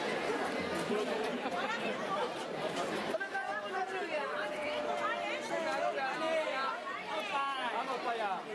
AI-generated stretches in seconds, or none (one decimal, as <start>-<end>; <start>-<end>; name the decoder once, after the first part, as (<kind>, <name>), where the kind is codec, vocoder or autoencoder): 1.3-3.2 (vocoder, BigVGAN v2); 4.0-4.8